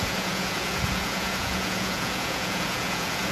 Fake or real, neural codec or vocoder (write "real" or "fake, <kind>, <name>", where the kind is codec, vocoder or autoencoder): fake, vocoder, Vocos